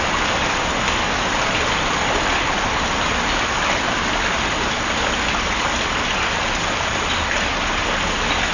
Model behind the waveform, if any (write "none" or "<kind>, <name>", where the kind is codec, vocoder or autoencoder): none